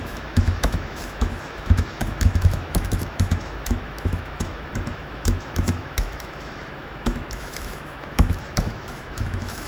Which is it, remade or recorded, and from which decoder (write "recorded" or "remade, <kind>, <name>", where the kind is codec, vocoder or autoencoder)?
remade, autoencoder, DAC-VAE